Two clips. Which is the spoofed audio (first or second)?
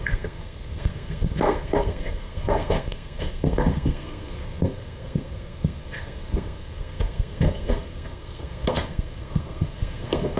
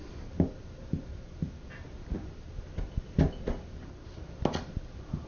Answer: first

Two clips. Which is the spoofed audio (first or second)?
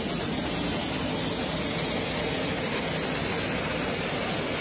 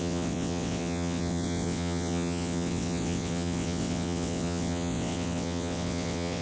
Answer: second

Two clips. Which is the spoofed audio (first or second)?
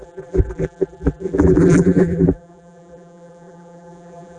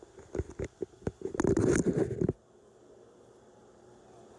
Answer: first